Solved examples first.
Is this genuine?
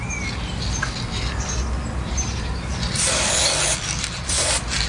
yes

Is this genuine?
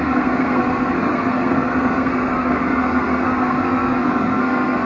no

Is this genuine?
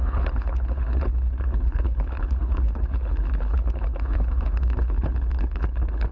no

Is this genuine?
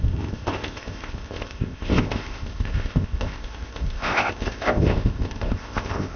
no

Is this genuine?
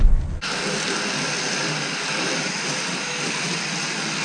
yes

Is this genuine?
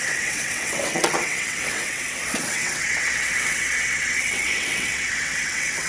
no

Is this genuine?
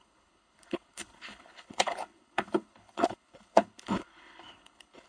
no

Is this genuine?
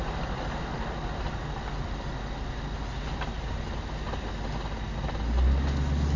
yes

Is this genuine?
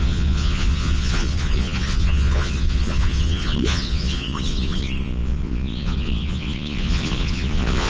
no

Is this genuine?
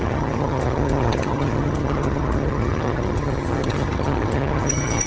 no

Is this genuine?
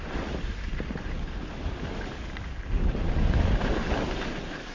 yes